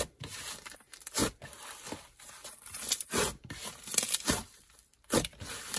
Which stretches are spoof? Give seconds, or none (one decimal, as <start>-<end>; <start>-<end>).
none